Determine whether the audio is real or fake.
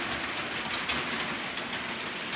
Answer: real